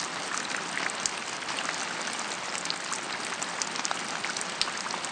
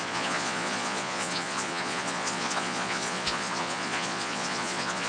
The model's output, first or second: second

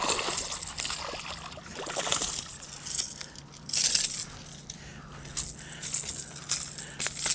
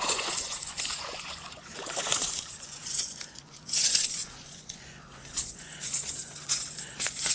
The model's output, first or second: second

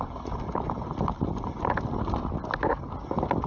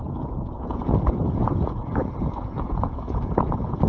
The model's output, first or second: second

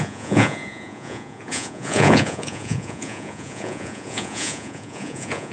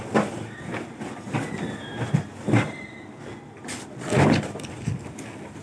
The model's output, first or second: first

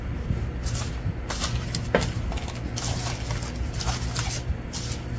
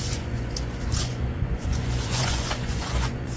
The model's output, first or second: second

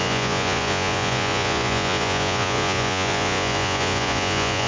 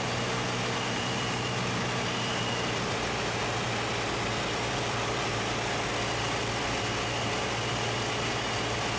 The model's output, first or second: first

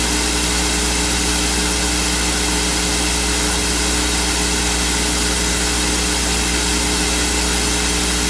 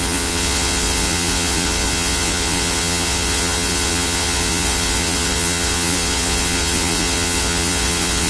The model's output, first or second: second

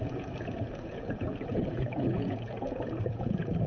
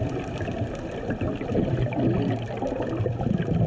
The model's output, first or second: first